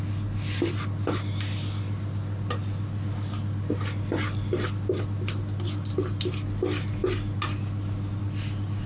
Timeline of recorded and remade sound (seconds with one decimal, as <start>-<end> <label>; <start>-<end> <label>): 0.0-8.9 recorded